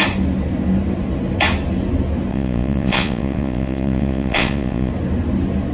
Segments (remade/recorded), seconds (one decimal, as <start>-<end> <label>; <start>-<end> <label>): 0.0-2.3 recorded; 2.3-4.9 remade; 4.9-5.7 recorded